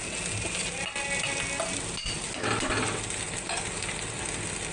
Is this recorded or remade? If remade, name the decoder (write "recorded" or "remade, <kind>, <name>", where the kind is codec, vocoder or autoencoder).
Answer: recorded